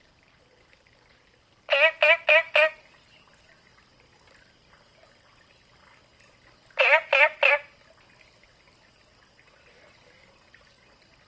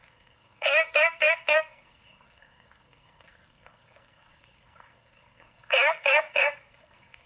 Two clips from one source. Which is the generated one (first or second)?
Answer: second